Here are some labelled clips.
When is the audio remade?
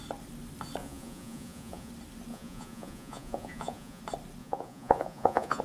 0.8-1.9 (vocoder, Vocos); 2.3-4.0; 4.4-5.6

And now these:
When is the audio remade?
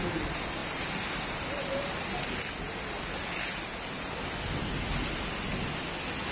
none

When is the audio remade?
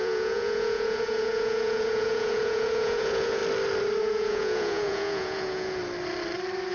0.0-3.4 (vocoder, Vocos); 4.0-5.8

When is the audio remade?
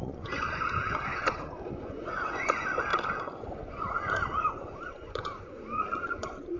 0.0-6.6 (vocoder, Vocos)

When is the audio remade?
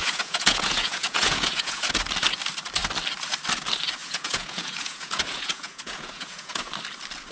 0.0-1.9 (vocoder, Vocos); 4.0-6.7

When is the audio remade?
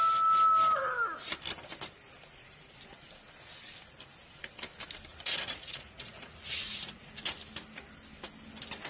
5.1-7.1 (vocoder, Vocos)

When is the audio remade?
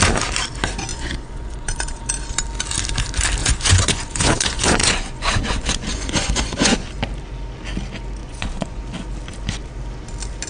0.9-2.0 (vocoder, Vocos); 3.4-6.9; 8.2-8.8